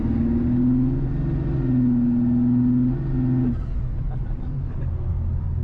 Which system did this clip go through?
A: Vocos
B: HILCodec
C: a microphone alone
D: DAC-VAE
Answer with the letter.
C